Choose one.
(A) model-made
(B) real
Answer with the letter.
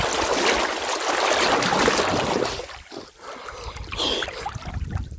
B